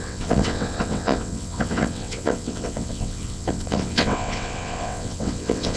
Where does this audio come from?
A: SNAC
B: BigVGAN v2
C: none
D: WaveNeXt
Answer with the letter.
D